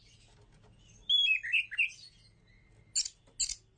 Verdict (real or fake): real